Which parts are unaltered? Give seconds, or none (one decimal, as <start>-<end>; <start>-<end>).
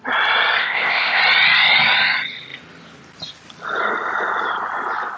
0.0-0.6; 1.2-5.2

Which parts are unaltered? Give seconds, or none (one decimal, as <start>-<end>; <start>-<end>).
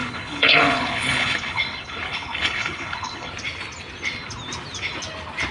3.3-5.5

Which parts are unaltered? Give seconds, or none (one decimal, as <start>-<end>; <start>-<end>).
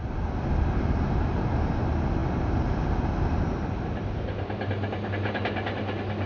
0.0-6.3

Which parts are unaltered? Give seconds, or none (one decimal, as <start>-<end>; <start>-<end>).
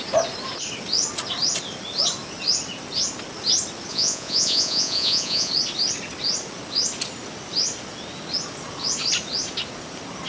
0.0-3.9; 5.5-10.3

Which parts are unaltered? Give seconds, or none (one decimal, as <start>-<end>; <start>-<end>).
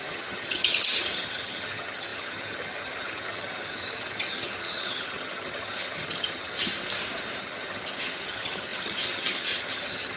6.7-7.4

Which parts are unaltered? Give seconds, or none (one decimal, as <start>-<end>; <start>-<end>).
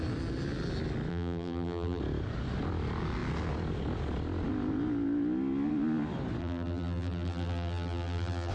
0.0-1.1; 2.0-6.4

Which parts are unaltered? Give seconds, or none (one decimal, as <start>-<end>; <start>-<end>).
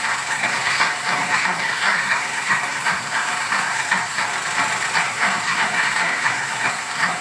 4.3-5.0